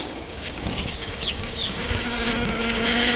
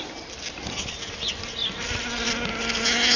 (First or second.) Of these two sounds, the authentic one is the second